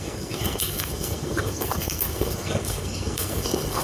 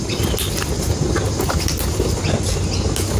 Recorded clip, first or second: second